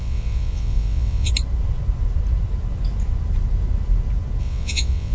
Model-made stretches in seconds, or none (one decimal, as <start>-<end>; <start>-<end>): 0.0-1.3; 4.4-5.1

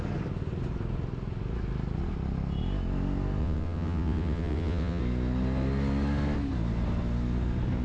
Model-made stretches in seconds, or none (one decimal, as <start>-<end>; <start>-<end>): 3.4-5.0

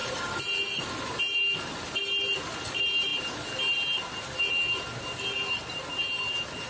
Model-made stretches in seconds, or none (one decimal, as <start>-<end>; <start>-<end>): none

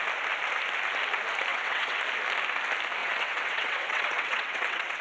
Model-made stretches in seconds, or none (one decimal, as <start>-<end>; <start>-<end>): 1.5-2.0; 3.0-5.0

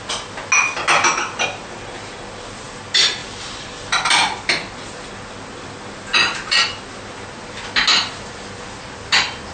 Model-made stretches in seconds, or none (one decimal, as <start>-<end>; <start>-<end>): none

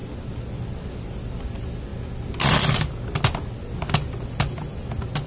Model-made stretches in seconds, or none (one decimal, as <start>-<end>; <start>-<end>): none

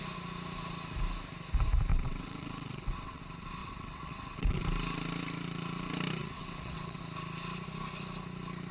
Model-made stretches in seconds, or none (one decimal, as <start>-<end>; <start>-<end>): 1.9-3.2; 3.6-4.6; 6.2-7.0

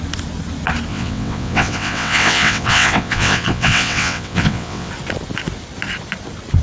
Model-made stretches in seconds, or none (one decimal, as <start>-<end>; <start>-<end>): 0.9-4.9